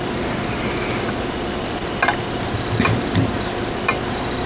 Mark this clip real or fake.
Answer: real